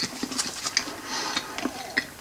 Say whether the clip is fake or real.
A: real